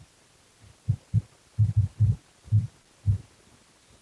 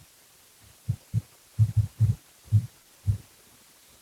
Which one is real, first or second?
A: first